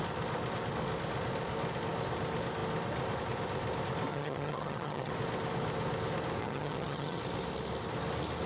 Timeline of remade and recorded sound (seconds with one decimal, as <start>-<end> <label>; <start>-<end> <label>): 0.0-4.1 recorded; 4.1-5.1 remade; 5.1-6.4 recorded; 6.4-7.2 remade; 7.2-8.5 recorded